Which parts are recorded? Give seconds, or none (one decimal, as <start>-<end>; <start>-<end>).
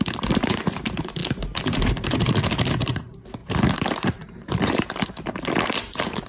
none